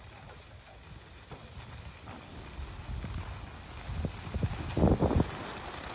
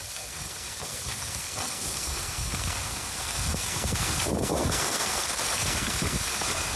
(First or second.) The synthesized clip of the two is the second